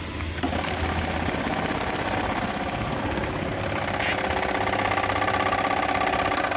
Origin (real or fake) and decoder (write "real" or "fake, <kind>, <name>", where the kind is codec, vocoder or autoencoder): real